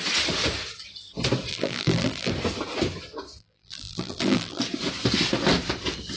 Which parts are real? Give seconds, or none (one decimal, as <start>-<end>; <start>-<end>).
0.0-1.5; 2.3-3.4; 4.6-6.2